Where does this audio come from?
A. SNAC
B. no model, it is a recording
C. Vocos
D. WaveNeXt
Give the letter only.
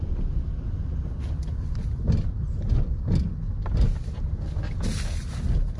B